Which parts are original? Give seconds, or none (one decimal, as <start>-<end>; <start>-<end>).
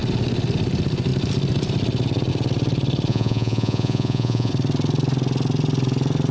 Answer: 0.0-3.1; 4.5-6.3